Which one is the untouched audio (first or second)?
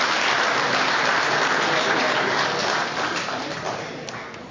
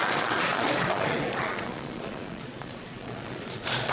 first